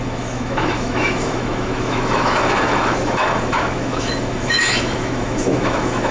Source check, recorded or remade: remade